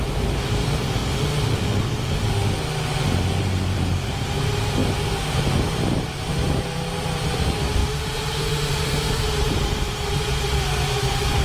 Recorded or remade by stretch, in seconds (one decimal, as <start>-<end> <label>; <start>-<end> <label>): 0.0-1.0 remade; 1.0-3.8 recorded; 3.8-11.4 remade